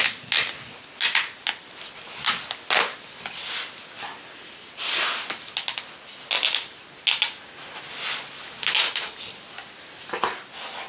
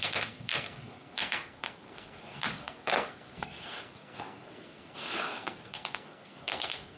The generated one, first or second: second